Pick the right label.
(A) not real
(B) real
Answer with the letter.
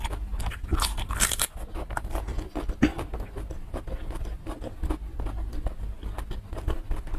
B